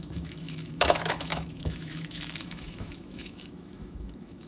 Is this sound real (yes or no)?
no